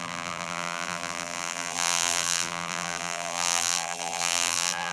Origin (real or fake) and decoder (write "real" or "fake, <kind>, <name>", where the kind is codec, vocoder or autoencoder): fake, vocoder, BigVGAN v2